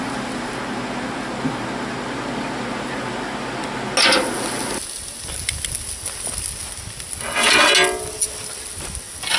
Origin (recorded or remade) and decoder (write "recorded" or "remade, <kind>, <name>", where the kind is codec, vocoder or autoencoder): recorded